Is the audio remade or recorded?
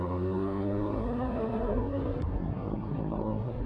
remade